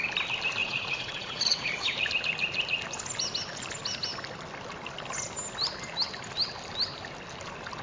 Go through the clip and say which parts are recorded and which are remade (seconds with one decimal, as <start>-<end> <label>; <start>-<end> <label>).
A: 0.0-0.6 recorded; 0.6-1.7 remade; 1.7-7.8 recorded

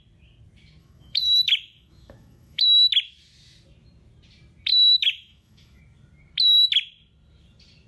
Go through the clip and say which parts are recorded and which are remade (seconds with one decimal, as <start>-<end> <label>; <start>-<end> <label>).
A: 0.0-0.8 recorded; 0.8-2.9 remade; 2.9-4.7 recorded; 4.7-5.8 remade; 5.8-7.9 recorded

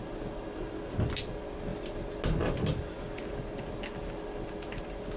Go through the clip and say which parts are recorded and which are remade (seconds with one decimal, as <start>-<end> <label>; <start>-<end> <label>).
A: 0.0-5.2 recorded